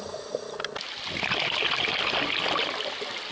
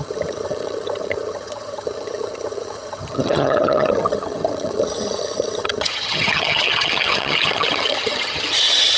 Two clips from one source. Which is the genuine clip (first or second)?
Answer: first